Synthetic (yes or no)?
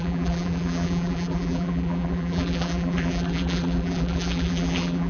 yes